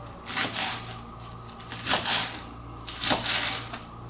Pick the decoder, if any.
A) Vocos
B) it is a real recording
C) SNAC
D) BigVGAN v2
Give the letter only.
B